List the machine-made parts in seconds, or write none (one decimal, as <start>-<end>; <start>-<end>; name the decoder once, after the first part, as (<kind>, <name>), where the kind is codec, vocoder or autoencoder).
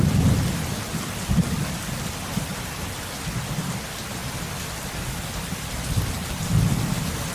4.2-6.0 (vocoder, BigVGAN v2)